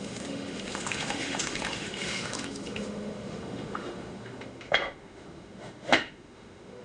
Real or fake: fake